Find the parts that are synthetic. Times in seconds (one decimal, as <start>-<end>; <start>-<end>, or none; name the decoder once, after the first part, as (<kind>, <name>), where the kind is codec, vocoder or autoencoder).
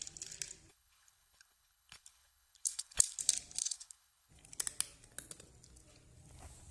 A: 0.7-3.2 (codec, HILCodec); 3.6-4.3